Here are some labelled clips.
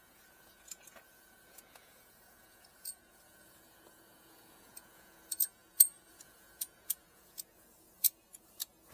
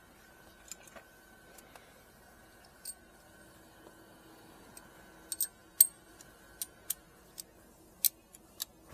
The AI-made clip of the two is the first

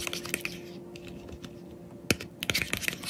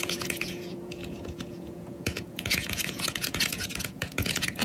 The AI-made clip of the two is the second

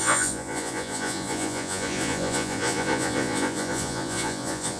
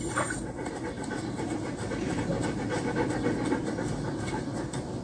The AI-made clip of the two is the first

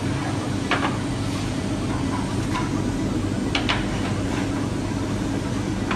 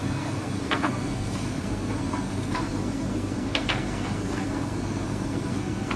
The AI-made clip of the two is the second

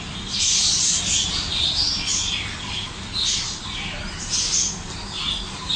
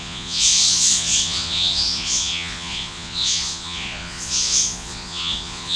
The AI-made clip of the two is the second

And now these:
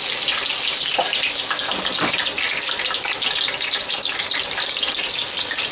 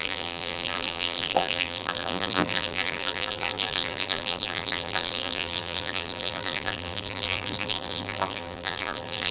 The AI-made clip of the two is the second